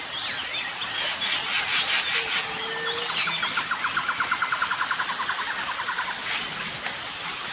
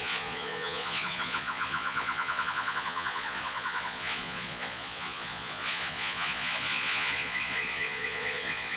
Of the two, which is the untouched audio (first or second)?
first